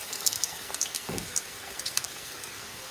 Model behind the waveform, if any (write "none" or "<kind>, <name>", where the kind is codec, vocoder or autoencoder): codec, SNAC